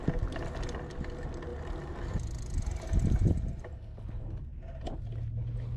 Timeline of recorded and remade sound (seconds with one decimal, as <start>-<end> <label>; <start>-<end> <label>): 0.0-5.8 recorded